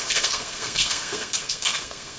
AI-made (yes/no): yes